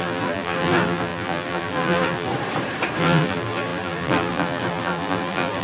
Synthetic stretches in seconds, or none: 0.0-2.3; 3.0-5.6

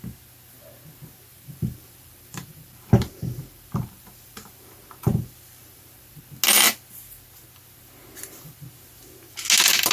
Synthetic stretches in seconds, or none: 1.3-6.2